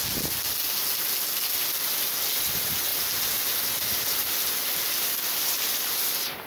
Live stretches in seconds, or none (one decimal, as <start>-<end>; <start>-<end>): 0.0-6.5